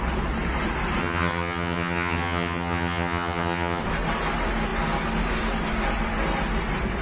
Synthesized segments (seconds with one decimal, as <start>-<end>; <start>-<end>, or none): 1.0-3.8